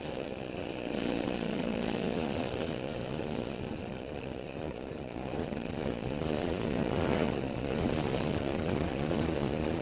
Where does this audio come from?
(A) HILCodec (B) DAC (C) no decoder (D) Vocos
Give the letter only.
D